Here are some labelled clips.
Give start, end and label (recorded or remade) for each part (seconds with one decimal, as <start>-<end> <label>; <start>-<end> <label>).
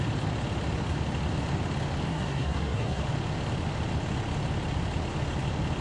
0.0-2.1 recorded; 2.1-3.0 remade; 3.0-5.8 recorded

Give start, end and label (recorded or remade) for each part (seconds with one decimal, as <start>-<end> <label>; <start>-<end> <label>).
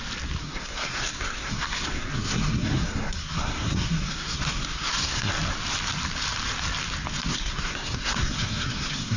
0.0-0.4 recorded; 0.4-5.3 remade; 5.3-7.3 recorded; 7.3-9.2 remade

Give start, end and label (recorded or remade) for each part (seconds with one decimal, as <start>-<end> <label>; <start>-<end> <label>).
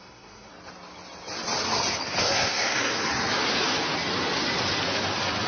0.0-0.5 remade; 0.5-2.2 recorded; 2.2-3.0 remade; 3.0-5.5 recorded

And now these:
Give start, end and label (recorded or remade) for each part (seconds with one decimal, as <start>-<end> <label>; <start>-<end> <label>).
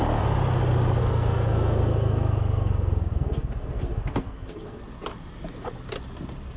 0.0-1.0 recorded; 1.0-4.8 remade; 4.8-6.6 recorded